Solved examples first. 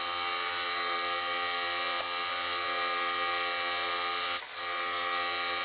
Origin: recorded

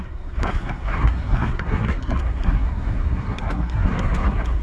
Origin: remade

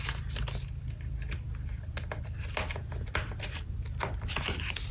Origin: recorded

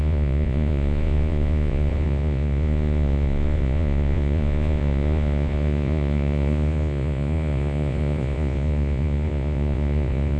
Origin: remade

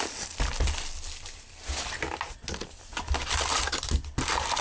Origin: recorded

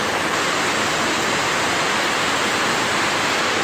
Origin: recorded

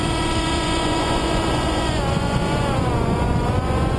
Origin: remade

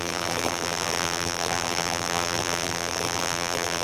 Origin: remade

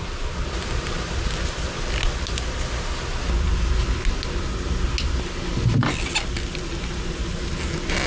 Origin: recorded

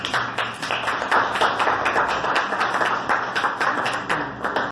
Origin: recorded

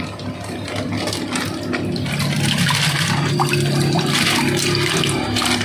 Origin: recorded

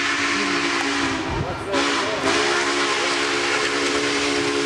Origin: recorded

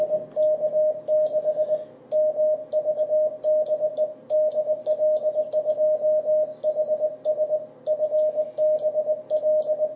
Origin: recorded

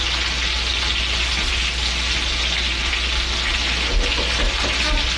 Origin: recorded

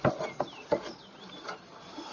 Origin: recorded